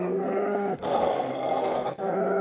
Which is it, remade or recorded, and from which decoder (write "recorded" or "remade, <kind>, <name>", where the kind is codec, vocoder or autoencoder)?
remade, codec, SNAC